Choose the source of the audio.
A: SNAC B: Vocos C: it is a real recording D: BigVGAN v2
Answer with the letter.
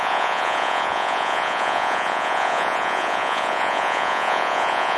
B